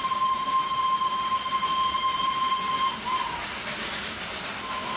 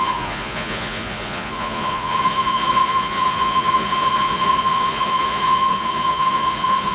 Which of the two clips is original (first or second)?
first